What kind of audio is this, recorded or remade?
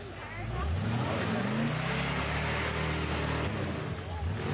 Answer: recorded